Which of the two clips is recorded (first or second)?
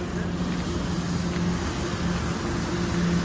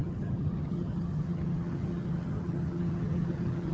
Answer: first